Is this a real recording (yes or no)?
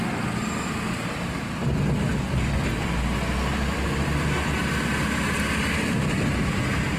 yes